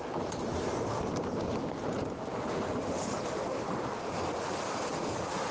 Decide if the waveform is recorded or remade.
recorded